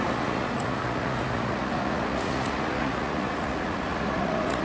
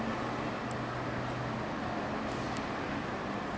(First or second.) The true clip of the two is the second